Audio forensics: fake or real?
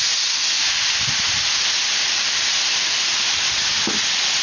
real